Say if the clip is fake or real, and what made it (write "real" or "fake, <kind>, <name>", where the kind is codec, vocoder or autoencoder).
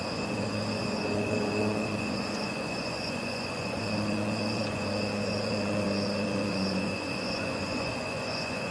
fake, vocoder, Vocos